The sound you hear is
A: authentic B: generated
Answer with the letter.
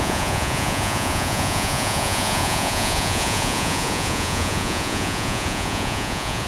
B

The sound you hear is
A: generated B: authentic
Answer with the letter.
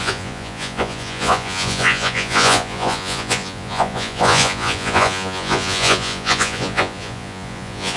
A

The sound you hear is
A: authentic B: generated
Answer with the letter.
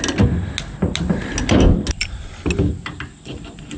A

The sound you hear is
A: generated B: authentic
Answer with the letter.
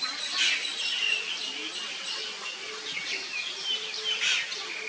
B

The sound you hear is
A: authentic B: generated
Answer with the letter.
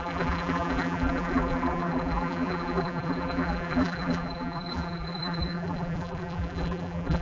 B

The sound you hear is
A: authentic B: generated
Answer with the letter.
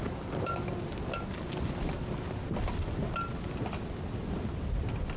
A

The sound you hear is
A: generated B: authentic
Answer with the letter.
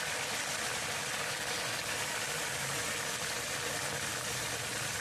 B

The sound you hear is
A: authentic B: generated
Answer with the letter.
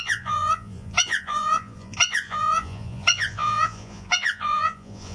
B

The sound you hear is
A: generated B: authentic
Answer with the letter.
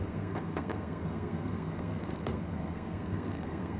A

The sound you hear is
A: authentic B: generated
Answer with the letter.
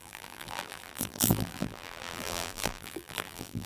B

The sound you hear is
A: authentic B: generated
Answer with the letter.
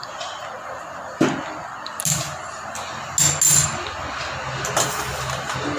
A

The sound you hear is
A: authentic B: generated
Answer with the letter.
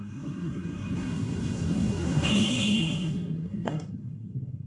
B